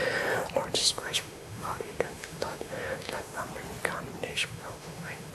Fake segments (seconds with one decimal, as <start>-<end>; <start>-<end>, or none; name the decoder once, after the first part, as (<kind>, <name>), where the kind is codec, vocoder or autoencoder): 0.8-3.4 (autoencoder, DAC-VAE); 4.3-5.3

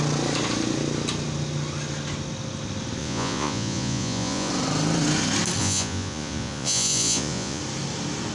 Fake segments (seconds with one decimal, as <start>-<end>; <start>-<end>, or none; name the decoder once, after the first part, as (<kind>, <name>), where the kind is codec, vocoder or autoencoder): 3.0-4.5 (vocoder, Vocos); 5.6-7.6

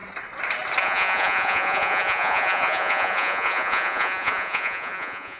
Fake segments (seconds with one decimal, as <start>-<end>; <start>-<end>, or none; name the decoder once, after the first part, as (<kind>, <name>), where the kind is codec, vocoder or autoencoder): 0.8-5.4 (vocoder, Vocos)

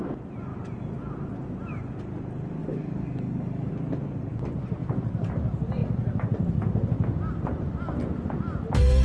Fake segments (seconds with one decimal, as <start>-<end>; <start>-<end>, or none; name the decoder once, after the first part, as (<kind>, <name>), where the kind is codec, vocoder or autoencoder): 2.6-3.7 (codec, DAC)

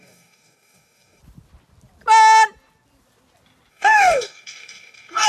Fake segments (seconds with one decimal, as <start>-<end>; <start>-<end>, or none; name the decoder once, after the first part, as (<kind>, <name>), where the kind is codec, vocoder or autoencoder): 0.0-1.2 (codec, DAC); 3.7-5.3

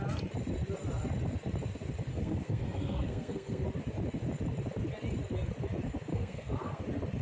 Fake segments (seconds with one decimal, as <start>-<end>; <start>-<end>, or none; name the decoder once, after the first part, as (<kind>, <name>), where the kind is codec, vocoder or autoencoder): 2.1-3.6 (codec, SNAC); 6.1-6.8

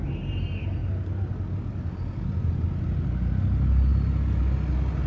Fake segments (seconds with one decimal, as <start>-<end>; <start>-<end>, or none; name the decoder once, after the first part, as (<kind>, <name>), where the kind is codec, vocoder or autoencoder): none